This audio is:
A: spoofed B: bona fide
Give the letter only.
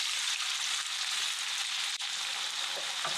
B